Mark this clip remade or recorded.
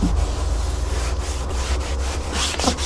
recorded